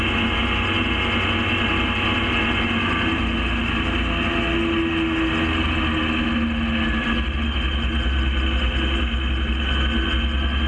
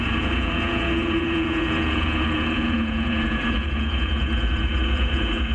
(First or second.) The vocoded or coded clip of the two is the second